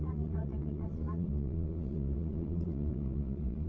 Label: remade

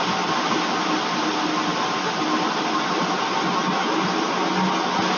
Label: recorded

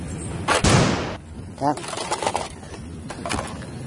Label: recorded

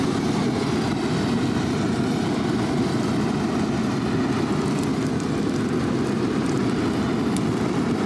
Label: recorded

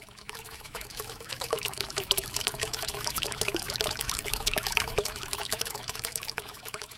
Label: remade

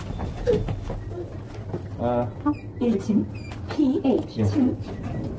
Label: recorded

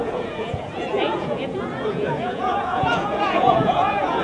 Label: remade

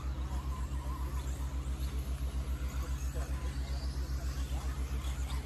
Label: recorded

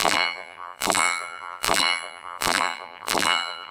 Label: remade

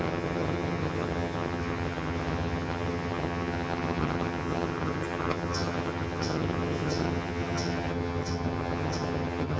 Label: remade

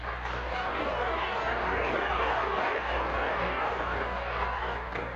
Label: remade